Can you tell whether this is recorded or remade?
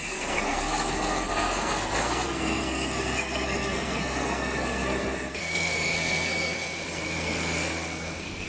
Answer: remade